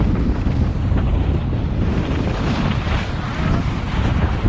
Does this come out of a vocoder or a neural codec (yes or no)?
no